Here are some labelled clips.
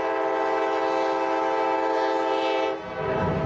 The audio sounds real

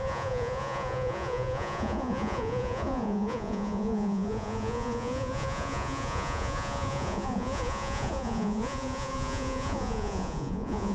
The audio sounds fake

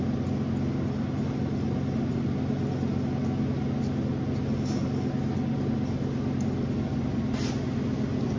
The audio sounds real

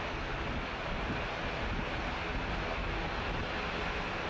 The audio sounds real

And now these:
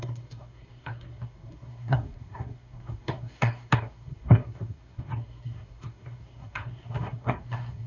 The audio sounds fake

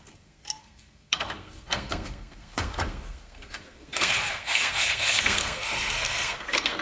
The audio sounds fake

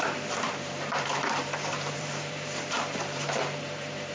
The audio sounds fake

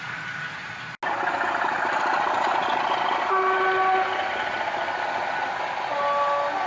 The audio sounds real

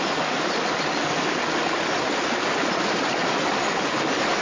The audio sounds real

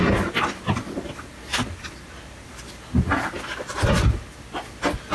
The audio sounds real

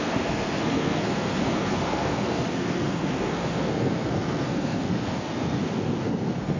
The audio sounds fake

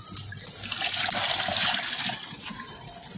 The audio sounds real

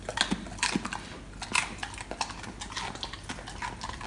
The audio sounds real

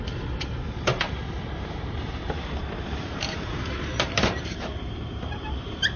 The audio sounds fake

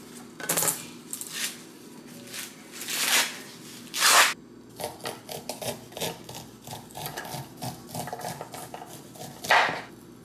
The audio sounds real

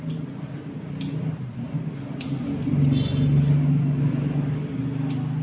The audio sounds real